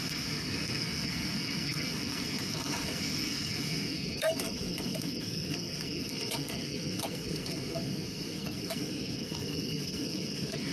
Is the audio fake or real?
fake